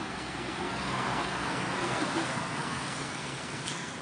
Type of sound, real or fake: fake